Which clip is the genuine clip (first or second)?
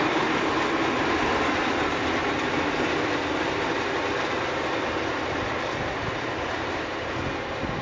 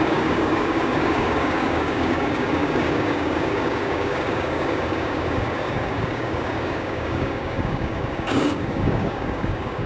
first